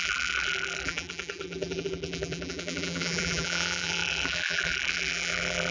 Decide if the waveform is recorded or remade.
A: remade